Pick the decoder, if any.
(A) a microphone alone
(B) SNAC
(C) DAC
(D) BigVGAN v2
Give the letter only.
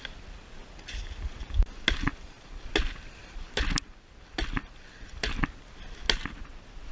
A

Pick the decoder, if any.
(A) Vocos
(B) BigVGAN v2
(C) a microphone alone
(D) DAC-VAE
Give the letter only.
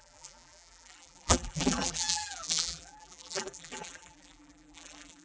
B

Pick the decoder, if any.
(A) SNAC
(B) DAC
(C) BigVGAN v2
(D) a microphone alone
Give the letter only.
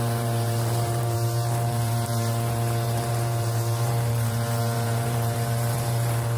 C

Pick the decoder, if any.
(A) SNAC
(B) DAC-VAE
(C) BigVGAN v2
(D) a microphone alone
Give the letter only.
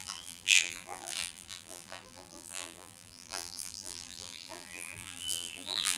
C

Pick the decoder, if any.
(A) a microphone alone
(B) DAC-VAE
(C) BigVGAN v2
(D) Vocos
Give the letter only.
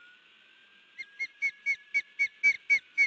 A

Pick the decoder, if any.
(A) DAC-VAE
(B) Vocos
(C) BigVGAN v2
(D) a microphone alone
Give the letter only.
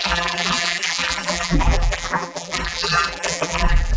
C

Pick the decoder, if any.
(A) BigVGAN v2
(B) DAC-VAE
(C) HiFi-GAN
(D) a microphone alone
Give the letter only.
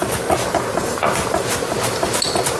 D